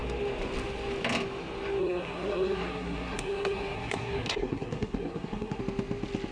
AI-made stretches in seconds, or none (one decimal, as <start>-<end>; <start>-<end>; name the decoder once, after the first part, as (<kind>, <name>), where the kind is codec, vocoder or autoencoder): 1.8-5.6 (codec, SNAC)